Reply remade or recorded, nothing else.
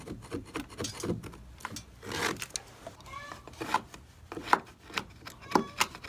recorded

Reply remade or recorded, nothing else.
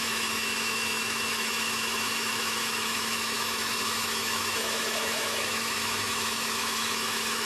remade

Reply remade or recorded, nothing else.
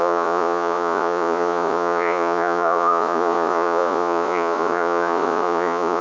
remade